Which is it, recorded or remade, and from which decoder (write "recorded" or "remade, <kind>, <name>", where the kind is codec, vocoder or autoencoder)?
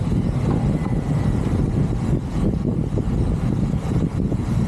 recorded